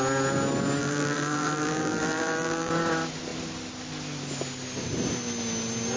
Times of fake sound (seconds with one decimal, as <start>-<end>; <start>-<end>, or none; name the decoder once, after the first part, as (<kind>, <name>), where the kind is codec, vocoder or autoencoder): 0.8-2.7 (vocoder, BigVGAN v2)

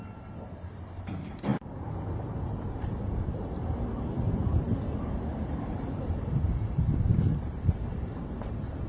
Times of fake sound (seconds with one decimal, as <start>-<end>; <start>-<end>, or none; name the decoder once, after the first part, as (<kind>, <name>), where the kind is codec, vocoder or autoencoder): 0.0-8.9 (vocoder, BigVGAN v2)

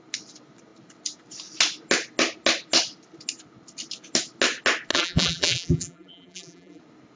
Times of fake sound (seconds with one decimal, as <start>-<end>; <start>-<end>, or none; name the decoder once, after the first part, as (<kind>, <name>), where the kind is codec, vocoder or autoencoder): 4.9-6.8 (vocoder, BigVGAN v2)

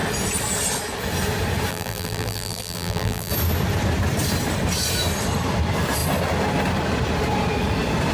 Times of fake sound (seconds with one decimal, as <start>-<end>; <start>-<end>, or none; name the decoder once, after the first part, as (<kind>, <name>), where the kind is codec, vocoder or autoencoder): 1.7-3.3 (vocoder, BigVGAN v2)